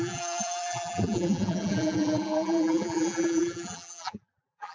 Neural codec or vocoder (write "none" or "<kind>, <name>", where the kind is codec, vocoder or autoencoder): vocoder, BigVGAN v2